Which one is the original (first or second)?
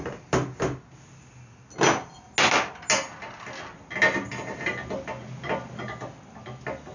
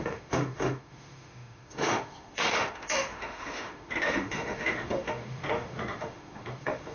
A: first